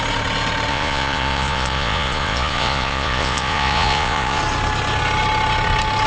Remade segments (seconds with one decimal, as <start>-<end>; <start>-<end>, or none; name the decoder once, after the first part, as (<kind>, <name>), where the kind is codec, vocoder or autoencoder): 0.7-4.4 (vocoder, Vocos)

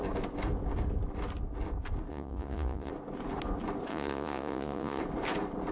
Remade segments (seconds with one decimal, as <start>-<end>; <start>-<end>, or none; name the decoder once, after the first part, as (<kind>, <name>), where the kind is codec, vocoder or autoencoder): 2.1-2.9 (vocoder, Vocos); 3.9-5.0

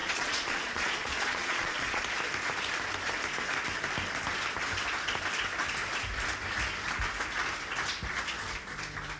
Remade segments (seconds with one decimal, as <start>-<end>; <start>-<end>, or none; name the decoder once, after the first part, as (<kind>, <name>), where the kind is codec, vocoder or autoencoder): 0.0-2.0 (vocoder, Vocos)

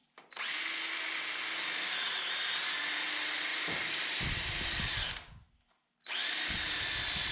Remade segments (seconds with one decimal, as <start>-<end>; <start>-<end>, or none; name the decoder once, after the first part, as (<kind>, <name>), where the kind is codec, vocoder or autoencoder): none